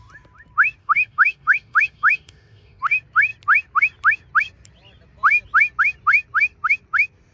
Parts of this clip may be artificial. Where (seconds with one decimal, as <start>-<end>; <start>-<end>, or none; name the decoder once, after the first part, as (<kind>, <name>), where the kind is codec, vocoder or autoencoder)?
0.8-2.8 (autoencoder, DAC-VAE)